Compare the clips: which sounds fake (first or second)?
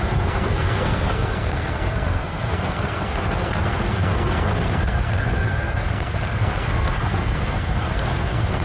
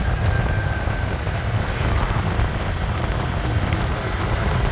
first